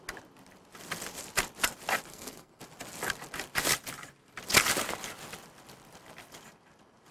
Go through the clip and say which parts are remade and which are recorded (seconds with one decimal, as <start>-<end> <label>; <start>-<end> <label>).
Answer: 0.0-2.1 recorded; 2.1-2.6 remade; 2.6-7.1 recorded